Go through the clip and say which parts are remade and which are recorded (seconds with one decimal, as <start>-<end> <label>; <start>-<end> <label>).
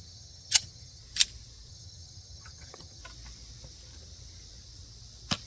0.0-1.0 remade; 1.0-1.7 recorded; 1.7-3.0 remade; 3.0-5.5 recorded